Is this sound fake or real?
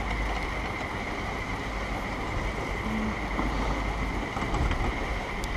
real